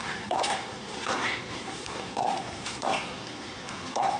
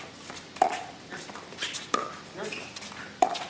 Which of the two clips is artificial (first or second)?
first